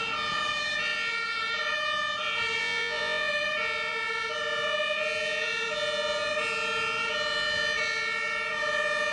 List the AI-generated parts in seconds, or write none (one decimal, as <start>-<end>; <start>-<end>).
2.6-3.3